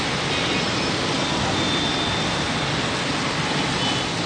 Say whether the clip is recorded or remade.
recorded